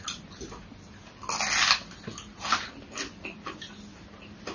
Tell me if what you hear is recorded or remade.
recorded